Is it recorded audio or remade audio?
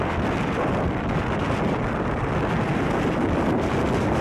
recorded